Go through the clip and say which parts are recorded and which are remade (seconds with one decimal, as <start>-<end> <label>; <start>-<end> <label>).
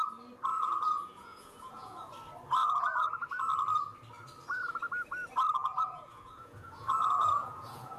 0.0-0.5 recorded; 0.5-2.1 remade; 2.1-2.6 recorded; 2.6-3.4 remade; 3.4-5.6 recorded; 5.6-8.0 remade